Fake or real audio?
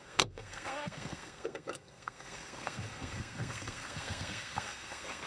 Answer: fake